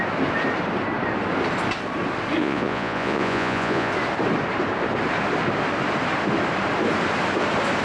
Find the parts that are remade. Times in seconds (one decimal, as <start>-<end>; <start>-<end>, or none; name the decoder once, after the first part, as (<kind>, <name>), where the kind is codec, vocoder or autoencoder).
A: 2.4-3.9 (vocoder, Vocos)